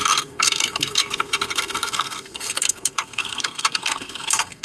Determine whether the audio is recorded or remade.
remade